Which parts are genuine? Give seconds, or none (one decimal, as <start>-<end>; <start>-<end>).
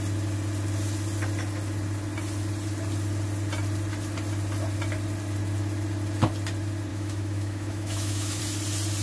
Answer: 0.0-6.9; 8.4-9.0